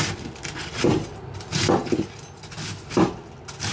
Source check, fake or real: real